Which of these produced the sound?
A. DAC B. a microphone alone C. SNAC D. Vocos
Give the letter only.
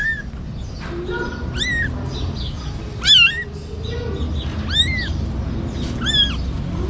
B